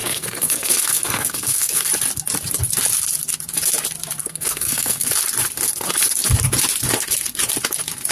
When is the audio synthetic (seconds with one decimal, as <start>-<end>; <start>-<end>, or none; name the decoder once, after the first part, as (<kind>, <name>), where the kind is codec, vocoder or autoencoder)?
0.0-1.9 (codec, SNAC); 4.2-5.1